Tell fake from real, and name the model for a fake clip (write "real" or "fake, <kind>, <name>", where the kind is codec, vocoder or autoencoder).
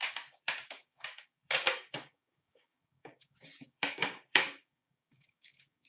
fake, codec, DAC